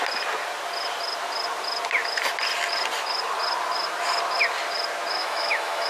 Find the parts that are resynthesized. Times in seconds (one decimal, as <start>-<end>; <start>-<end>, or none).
5.2-5.9

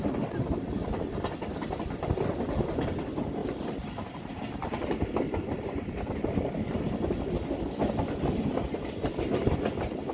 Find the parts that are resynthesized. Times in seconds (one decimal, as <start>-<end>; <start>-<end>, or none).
none

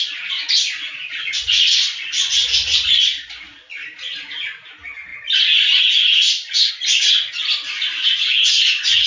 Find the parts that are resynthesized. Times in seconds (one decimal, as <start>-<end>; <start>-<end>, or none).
none

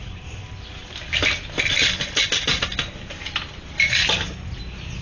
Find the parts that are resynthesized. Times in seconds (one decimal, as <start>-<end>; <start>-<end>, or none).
none

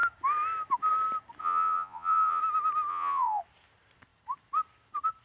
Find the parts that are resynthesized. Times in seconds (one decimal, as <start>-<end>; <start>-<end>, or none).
1.4-2.4; 2.9-3.4

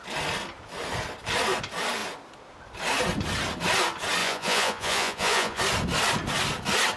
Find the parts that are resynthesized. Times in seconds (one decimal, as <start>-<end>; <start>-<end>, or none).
4.2-5.6

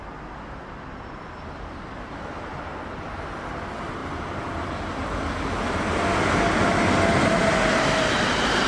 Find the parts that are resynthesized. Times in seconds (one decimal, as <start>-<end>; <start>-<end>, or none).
none

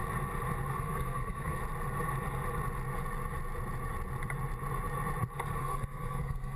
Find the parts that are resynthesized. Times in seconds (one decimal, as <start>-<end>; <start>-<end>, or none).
0.7-1.6; 5.6-6.6